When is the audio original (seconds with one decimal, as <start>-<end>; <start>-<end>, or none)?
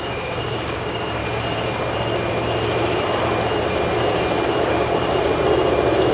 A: 1.2-4.6; 5.3-6.1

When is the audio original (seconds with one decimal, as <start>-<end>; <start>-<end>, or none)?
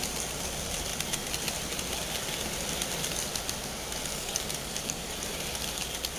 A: 0.0-4.1; 5.1-6.2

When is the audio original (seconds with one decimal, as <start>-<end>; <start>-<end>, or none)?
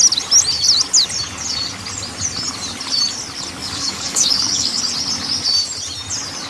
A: 0.0-3.6; 4.8-6.5